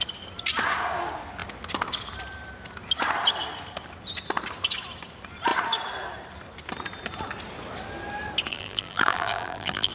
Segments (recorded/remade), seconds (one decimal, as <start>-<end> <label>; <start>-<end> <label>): 0.0-8.5 recorded; 8.5-9.9 remade